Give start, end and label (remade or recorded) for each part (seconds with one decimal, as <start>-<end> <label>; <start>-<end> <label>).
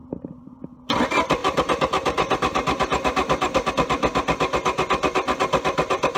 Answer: 0.0-0.6 remade; 0.6-1.4 recorded; 1.4-3.7 remade; 3.7-6.2 recorded